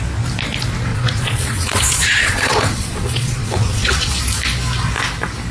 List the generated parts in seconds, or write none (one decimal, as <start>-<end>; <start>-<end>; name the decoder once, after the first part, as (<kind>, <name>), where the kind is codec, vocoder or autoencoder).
0.9-4.2 (vocoder, Vocos)